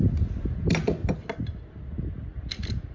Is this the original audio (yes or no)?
yes